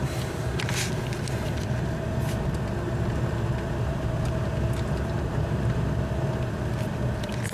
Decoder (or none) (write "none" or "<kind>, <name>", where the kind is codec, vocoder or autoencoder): none